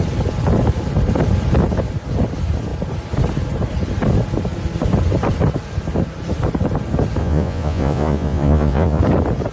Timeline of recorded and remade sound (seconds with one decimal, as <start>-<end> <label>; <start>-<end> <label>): 0.0-7.2 recorded; 7.2-9.0 remade; 9.0-9.5 recorded

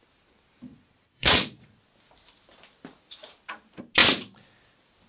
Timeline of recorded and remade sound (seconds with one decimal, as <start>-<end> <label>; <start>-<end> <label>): 0.0-0.7 recorded; 0.7-1.8 remade; 1.8-5.1 recorded

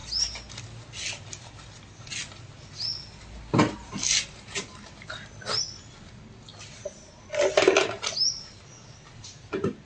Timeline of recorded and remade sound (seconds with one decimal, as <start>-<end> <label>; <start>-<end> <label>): 0.0-9.9 recorded